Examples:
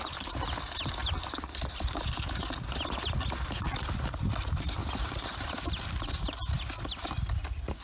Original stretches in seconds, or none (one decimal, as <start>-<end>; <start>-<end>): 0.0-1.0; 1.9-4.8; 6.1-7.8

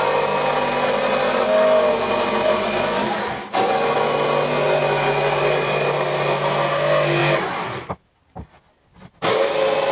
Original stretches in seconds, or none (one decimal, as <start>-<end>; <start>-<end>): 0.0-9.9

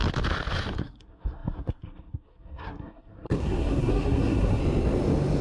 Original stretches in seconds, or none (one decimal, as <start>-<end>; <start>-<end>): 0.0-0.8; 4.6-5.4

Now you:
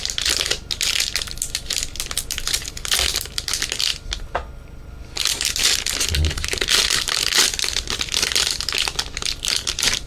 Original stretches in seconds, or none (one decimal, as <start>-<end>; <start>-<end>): 0.0-10.1

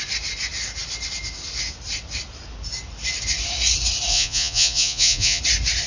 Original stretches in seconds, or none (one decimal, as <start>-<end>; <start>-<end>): 0.0-4.1; 5.4-5.9

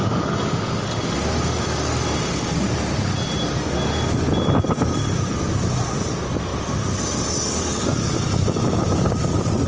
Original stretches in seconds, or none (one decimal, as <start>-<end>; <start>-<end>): 0.0-6.5